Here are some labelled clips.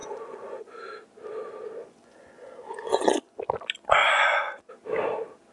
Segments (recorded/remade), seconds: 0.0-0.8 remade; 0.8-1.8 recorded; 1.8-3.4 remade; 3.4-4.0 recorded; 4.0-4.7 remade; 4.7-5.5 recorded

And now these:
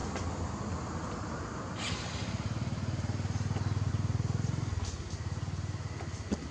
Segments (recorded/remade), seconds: 0.0-6.5 recorded

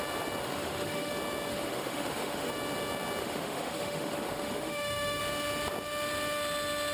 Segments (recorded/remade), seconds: 0.0-0.4 recorded; 0.4-1.1 remade; 1.1-1.5 recorded; 1.5-2.5 remade; 2.5-3.2 recorded; 3.2-5.2 remade; 5.2-6.9 recorded

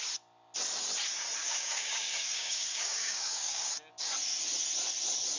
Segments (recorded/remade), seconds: 0.0-1.4 recorded; 1.4-3.7 remade; 3.7-5.4 recorded

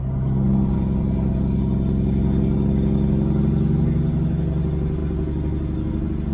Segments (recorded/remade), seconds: 0.0-6.3 recorded